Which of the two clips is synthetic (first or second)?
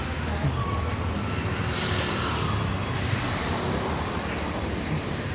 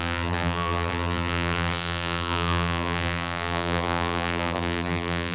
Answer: second